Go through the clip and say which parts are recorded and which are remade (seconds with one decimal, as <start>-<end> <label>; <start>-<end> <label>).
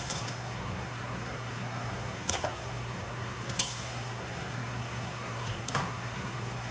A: 0.0-6.7 remade